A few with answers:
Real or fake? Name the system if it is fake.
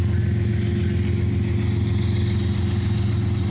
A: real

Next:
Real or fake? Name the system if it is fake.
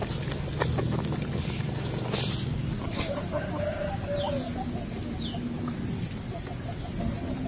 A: real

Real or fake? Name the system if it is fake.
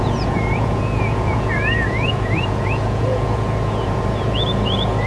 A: fake, vocoder, Vocos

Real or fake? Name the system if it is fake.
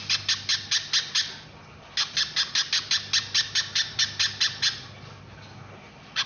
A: real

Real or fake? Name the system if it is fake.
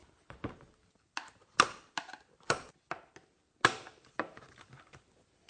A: real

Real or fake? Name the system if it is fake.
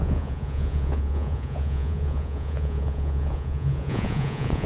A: fake, vocoder, Vocos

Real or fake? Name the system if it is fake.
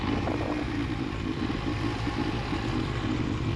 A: real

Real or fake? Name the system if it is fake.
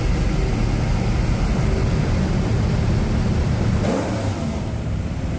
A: real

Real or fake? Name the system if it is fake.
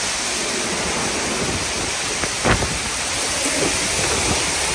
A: real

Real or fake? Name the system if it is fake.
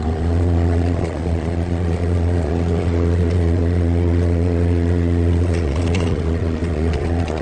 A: fake, vocoder, Vocos